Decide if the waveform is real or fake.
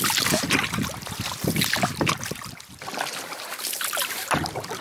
real